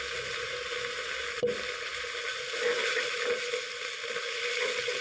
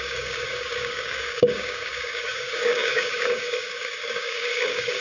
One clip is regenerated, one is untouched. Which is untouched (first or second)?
first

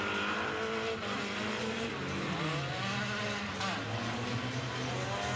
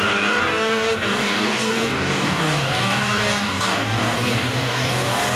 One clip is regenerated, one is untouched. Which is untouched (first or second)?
first